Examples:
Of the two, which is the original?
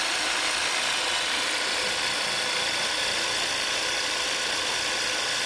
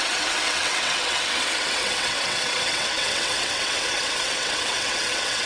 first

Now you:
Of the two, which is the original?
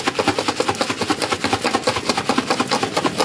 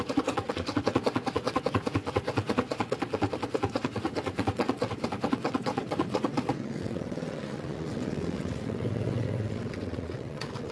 first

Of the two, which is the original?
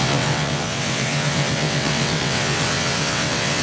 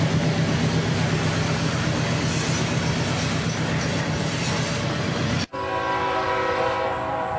second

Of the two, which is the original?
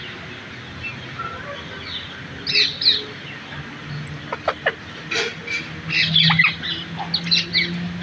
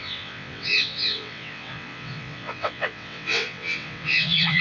first